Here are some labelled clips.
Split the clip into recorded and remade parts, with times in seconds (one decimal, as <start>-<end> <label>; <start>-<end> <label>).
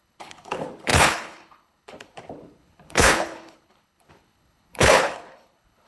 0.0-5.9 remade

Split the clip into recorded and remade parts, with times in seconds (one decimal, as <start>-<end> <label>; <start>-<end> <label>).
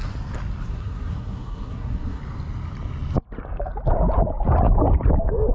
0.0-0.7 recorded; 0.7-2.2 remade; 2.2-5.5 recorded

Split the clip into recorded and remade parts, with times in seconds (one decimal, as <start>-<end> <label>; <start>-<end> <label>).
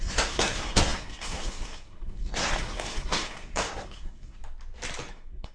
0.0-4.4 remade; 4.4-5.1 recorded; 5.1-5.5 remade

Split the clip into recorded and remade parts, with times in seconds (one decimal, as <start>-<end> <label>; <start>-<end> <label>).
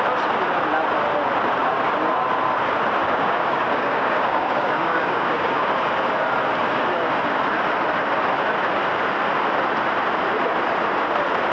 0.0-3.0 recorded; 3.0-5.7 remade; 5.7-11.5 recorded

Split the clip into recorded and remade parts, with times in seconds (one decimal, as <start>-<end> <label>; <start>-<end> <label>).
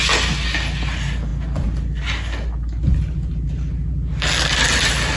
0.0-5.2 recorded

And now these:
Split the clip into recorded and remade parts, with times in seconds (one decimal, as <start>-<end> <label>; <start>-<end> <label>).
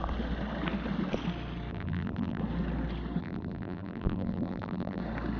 0.0-1.7 recorded; 1.7-2.4 remade; 2.4-3.2 recorded; 3.2-5.0 remade; 5.0-5.4 recorded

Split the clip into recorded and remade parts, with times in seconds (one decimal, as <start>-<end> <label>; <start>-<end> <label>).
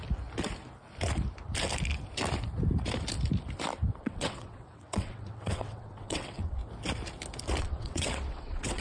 0.0-4.0 recorded; 4.0-6.6 remade; 6.6-7.6 recorded; 7.6-8.8 remade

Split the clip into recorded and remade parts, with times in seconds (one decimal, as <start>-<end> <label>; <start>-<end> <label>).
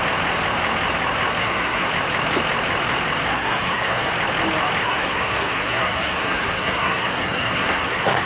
0.0-1.4 recorded; 1.4-1.9 remade; 1.9-3.3 recorded; 3.3-4.1 remade; 4.1-4.8 recorded; 4.8-8.3 remade